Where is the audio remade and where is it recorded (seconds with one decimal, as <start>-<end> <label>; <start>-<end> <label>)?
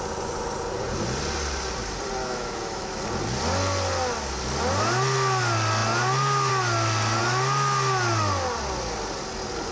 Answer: 0.0-2.2 recorded; 2.2-3.0 remade; 3.0-9.7 recorded